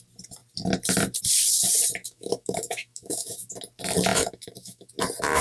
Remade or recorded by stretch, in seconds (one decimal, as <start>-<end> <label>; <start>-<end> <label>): 0.0-2.0 recorded; 2.0-3.5 remade; 3.5-4.1 recorded; 4.1-4.9 remade; 4.9-5.4 recorded

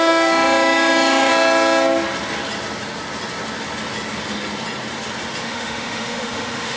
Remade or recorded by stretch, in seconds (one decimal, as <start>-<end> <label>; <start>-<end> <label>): 0.0-1.3 remade; 1.3-5.4 recorded; 5.4-6.8 remade

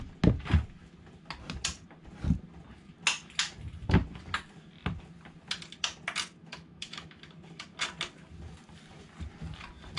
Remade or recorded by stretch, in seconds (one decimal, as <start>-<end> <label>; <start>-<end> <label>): 0.0-6.4 recorded; 6.4-7.2 remade; 7.2-10.0 recorded